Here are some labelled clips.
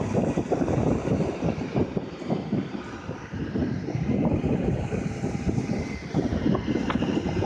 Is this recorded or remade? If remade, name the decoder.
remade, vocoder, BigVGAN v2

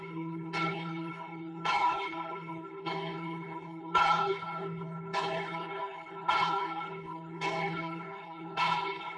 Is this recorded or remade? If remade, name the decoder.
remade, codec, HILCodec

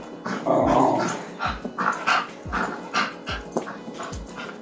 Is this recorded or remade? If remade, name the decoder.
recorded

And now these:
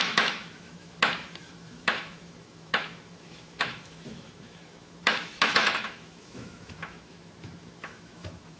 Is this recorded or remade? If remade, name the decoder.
remade, autoencoder, DAC-VAE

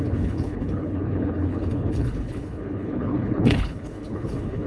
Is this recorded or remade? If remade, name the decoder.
remade, codec, HILCodec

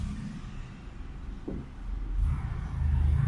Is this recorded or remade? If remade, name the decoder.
recorded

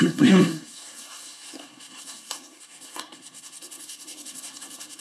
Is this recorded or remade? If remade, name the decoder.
remade, codec, SNAC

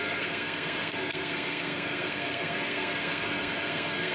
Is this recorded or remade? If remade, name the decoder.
remade, codec, SNAC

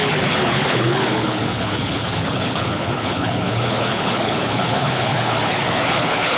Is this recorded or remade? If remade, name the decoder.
remade, codec, HILCodec